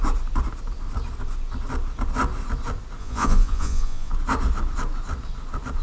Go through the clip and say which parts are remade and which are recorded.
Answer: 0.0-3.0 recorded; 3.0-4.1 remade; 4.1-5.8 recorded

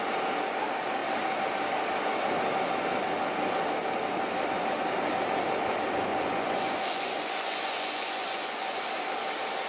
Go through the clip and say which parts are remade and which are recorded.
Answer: 0.0-6.1 recorded; 6.1-8.8 remade; 8.8-9.7 recorded

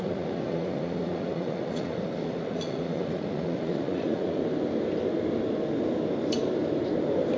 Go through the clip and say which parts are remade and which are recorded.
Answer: 0.0-4.4 remade; 4.4-7.4 recorded

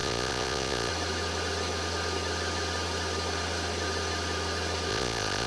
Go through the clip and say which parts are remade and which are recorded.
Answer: 0.0-0.9 remade; 0.9-4.9 recorded; 4.9-5.5 remade

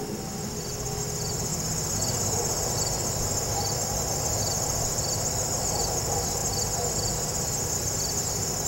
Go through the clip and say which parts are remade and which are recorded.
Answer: 0.0-8.7 recorded